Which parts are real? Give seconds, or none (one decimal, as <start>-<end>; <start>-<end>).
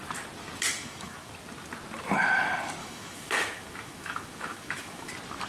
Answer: 0.0-0.7; 1.3-2.8; 5.1-5.5